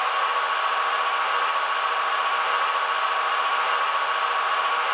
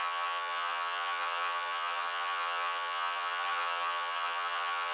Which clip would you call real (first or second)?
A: first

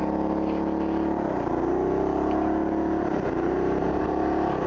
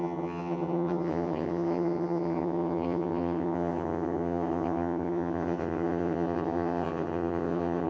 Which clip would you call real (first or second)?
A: first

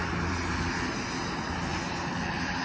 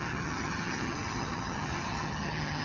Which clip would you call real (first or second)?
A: first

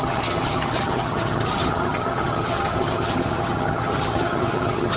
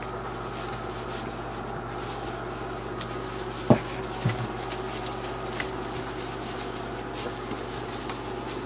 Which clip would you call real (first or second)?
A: second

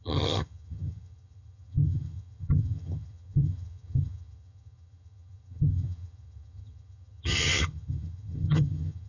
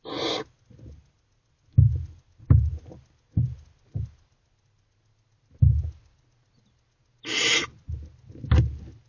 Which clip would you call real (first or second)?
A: second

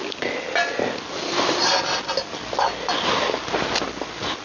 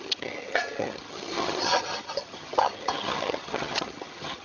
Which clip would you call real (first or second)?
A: first